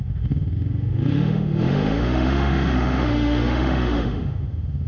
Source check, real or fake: fake